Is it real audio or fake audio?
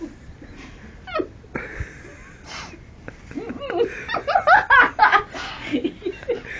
real